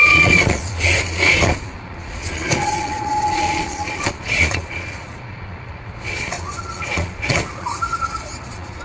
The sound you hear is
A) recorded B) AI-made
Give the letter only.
B